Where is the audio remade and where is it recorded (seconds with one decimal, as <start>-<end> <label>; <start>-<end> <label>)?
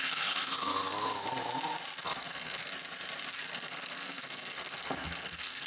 0.0-0.7 remade; 0.7-2.0 recorded; 2.0-2.7 remade; 2.7-3.3 recorded; 3.3-5.7 remade